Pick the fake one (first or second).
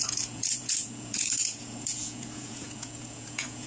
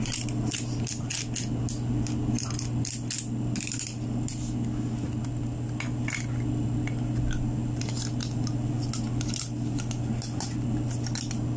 first